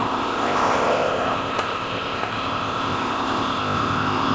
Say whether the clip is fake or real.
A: fake